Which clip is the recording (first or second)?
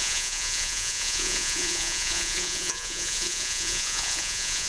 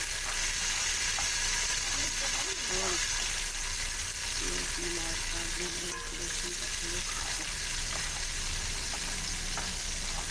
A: second